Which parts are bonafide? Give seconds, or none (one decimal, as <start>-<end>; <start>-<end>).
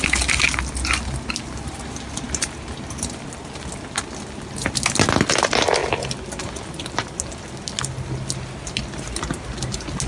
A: 0.0-10.1